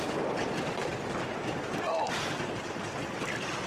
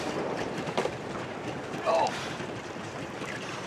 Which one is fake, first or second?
second